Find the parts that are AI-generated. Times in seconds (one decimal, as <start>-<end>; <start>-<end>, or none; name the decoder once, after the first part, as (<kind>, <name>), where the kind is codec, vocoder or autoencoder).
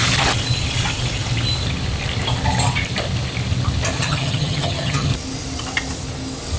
4.0-5.1 (vocoder, HiFi-GAN)